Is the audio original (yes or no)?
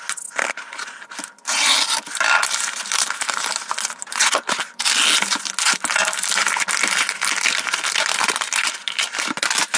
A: yes